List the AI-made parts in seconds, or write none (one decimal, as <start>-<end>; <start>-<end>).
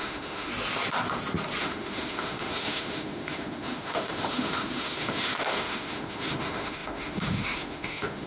0.0-0.5; 1.6-8.3